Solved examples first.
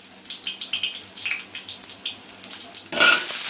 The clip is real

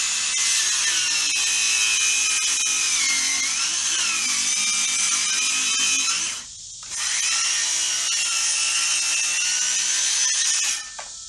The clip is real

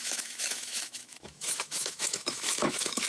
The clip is fake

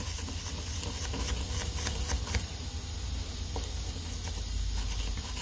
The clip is real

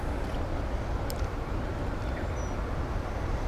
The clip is real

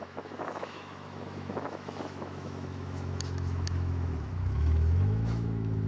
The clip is fake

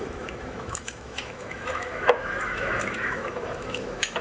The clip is fake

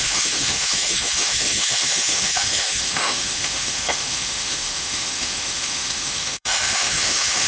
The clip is fake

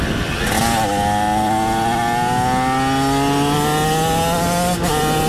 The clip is real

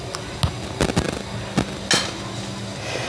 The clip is real